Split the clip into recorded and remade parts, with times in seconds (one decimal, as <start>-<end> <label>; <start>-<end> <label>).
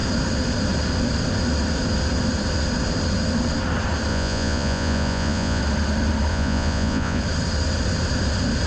0.0-4.1 recorded; 4.1-5.6 remade; 5.6-6.3 recorded; 6.3-7.2 remade; 7.2-8.7 recorded